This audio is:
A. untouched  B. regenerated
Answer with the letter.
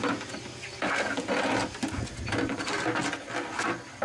A